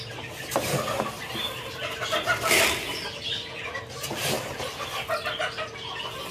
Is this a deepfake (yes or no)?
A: no